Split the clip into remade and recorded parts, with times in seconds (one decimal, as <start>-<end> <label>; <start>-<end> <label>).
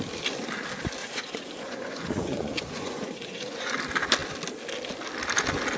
0.0-1.0 recorded; 1.0-3.7 remade; 3.7-5.8 recorded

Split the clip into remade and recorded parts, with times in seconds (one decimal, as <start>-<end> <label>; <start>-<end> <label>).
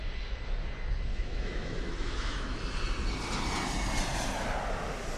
0.0-1.1 recorded; 1.1-2.6 remade; 2.6-5.2 recorded